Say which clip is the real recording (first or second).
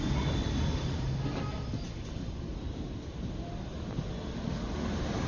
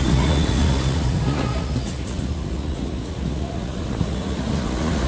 first